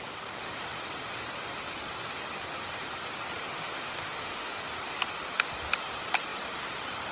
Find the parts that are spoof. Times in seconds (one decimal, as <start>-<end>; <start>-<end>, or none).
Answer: 3.5-4.6